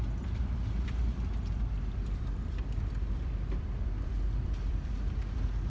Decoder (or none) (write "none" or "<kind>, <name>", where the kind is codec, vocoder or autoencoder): vocoder, BigVGAN v2